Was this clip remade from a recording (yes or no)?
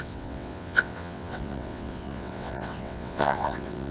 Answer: yes